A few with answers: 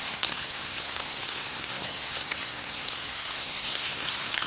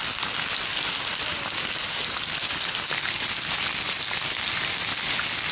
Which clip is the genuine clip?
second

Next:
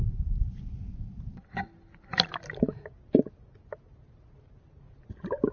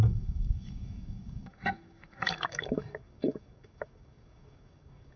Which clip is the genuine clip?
first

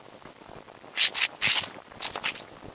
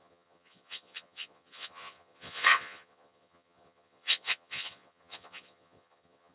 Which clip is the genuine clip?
first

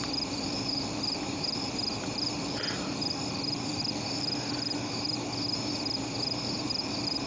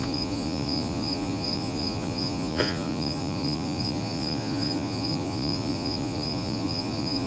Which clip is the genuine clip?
first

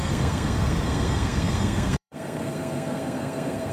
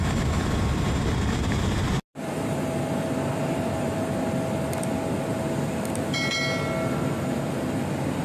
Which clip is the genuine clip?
second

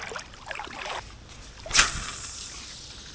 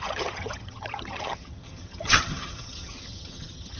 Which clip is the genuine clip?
first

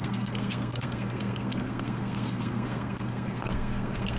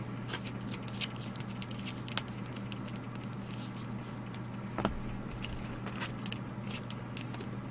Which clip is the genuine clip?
second